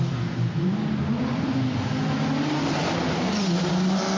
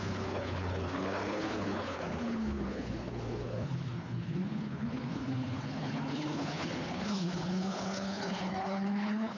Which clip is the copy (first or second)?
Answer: second